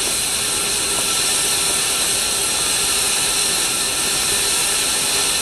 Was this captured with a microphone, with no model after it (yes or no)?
yes